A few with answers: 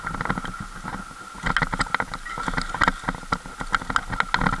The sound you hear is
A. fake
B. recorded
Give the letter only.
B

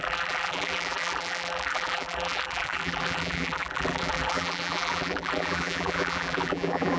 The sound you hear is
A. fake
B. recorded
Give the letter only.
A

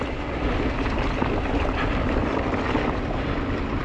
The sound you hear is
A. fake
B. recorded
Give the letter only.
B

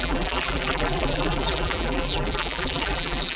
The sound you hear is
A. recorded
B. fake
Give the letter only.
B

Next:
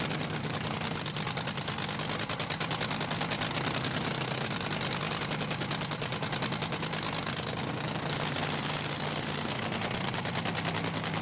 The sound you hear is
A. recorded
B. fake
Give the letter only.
A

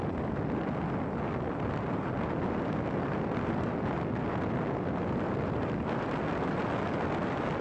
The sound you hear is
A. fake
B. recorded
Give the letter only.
B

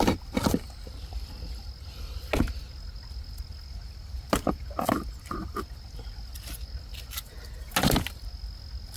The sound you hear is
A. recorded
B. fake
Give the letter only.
A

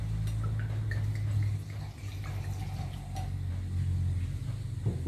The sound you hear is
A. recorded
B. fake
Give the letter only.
A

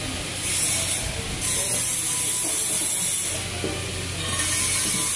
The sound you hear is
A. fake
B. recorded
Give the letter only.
B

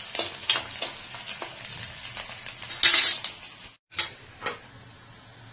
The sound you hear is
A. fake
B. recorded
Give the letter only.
B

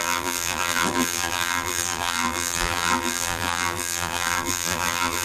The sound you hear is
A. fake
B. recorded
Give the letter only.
A